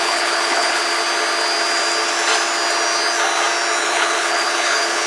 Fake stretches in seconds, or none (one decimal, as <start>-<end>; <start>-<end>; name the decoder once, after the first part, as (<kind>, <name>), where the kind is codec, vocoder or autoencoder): 0.0-0.8 (codec, HILCodec); 3.8-5.1

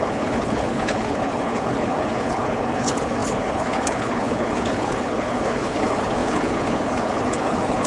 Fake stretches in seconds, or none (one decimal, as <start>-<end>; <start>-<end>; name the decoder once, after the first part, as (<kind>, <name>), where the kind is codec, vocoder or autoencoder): 0.0-7.9 (codec, HILCodec)

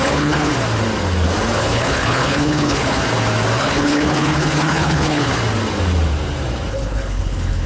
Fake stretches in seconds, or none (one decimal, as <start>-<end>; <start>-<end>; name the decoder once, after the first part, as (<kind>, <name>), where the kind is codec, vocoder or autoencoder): 0.0-0.5 (codec, HILCodec); 1.6-3.0; 3.6-5.4; 6.7-7.7

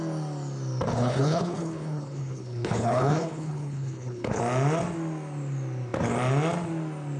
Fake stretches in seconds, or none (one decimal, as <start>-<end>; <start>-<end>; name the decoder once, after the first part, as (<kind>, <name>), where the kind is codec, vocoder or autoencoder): 0.9-4.4 (codec, HILCodec)

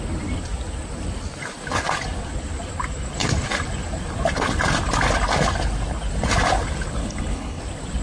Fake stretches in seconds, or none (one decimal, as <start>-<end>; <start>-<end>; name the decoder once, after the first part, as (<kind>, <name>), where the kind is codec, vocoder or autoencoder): 7.0-7.6 (codec, HILCodec)